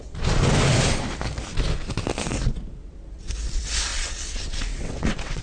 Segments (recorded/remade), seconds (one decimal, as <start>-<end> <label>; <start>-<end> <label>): 0.0-3.9 recorded; 3.9-5.4 remade